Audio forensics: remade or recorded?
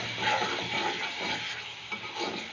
recorded